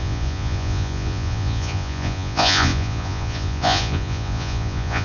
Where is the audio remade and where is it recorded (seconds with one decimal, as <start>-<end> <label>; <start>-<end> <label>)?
0.0-5.0 remade